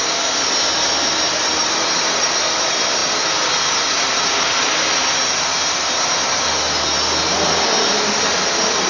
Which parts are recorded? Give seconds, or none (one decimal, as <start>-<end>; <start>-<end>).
0.7-1.3; 3.0-7.8

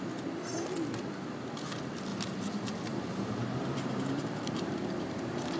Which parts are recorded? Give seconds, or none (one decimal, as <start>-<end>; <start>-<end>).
0.0-2.1

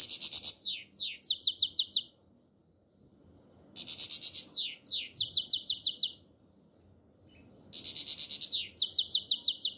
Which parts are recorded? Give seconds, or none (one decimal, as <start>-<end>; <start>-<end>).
0.0-9.8

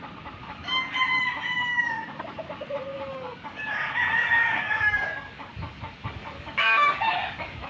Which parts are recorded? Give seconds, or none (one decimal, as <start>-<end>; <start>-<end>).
0.0-0.4; 1.2-1.7; 2.2-2.9

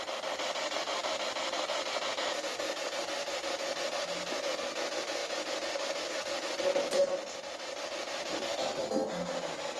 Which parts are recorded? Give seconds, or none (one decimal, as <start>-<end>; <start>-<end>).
0.0-9.8

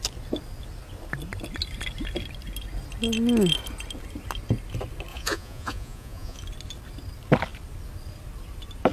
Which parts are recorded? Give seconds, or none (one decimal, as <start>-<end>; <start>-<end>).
0.0-5.1; 6.4-8.9

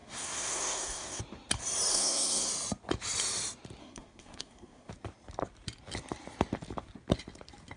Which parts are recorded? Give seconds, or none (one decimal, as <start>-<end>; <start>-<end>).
1.2-1.9; 2.5-3.8; 4.9-7.8

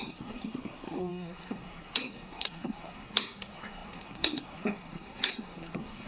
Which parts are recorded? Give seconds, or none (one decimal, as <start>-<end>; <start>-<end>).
none